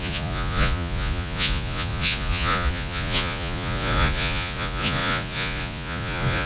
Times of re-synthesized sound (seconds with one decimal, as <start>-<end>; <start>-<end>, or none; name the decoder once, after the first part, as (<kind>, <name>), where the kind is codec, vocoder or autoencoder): 0.0-6.5 (vocoder, Vocos)